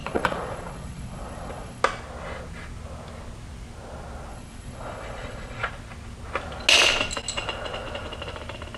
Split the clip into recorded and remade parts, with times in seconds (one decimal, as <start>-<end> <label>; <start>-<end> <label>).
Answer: 0.0-1.8 remade; 1.8-4.3 recorded; 4.3-5.7 remade; 5.7-8.8 recorded